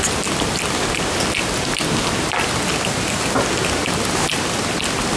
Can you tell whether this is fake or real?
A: real